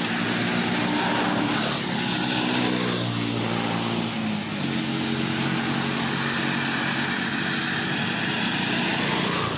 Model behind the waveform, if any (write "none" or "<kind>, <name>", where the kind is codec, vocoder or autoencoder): none